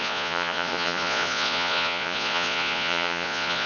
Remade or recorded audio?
remade